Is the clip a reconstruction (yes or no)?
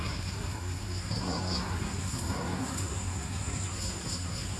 yes